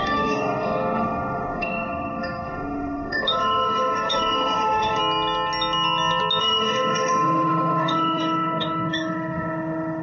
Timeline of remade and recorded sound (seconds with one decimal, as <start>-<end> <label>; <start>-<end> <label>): 0.0-5.0 remade; 5.0-6.4 recorded; 6.4-10.0 remade